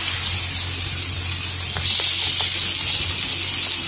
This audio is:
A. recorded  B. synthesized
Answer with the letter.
A